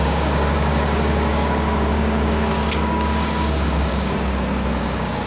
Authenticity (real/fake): fake